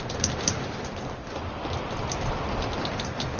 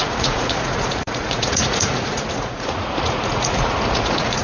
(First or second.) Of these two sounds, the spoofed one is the second